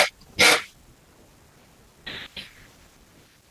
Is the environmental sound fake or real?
real